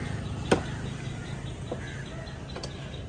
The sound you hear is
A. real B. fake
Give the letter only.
A